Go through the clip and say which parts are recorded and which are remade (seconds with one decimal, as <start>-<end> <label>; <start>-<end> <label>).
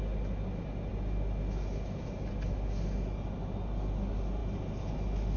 0.0-5.4 recorded